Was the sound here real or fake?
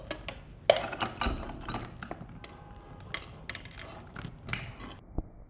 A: real